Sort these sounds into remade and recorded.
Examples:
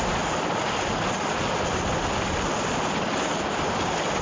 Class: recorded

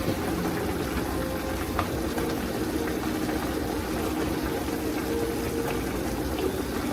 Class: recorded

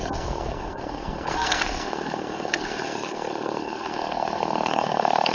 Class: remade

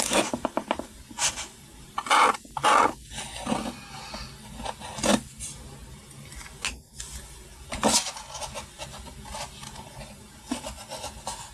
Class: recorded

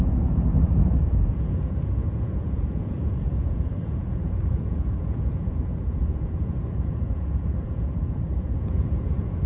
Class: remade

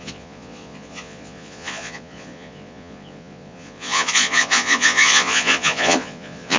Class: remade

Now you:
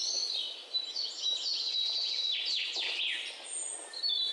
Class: recorded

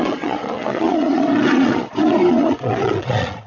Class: remade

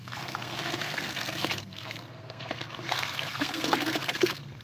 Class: remade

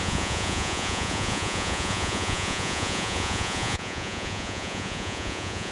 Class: remade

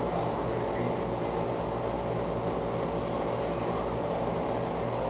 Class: recorded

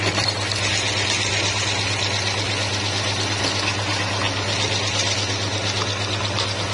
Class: recorded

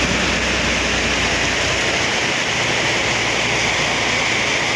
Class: recorded